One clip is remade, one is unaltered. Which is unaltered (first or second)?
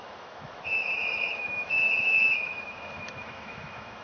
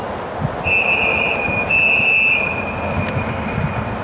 second